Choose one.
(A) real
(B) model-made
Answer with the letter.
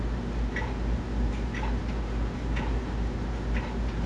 A